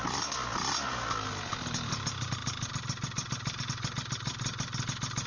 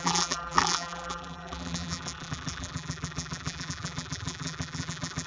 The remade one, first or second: second